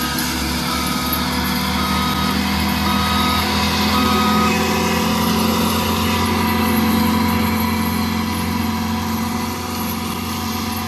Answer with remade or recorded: recorded